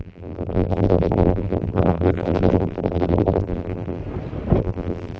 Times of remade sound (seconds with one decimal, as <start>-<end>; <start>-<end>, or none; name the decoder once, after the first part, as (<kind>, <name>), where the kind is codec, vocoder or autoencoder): 0.0-4.0 (vocoder, BigVGAN v2); 4.6-5.2